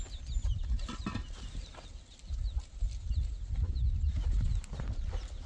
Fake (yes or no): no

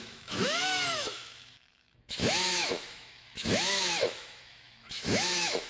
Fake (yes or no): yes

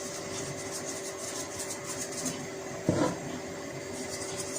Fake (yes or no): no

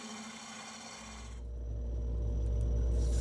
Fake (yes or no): no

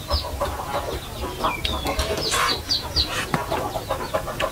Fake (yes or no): no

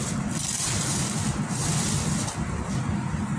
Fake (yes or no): no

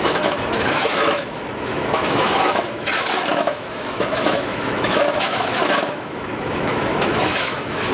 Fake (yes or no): yes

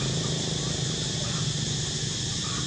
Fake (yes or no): no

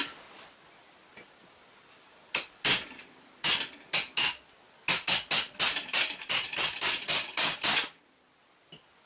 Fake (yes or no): no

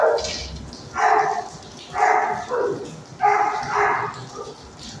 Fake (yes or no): no